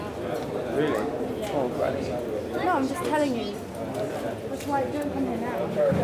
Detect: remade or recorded recorded